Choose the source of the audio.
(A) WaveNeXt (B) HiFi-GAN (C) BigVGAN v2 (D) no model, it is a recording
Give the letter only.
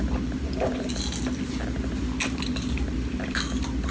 D